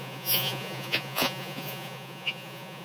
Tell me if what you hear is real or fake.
fake